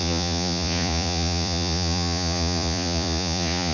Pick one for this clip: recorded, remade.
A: remade